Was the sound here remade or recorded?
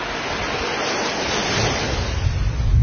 recorded